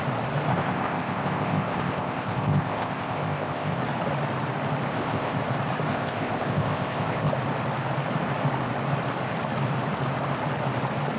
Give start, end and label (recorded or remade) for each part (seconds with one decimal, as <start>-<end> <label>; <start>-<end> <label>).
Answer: 0.0-0.5 recorded; 0.5-3.8 remade; 3.8-4.9 recorded; 4.9-5.4 remade; 5.4-5.9 recorded; 5.9-7.3 remade; 7.3-11.2 recorded